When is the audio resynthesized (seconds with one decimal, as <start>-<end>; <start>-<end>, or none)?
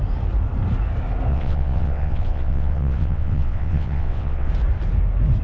1.3-4.5